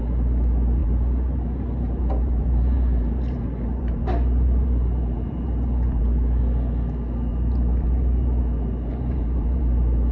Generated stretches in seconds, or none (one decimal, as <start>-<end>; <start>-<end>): 0.8-6.0; 7.3-8.4; 8.9-9.6